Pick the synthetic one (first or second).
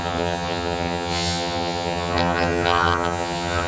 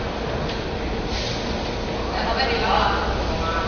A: first